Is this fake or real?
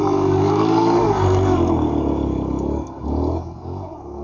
fake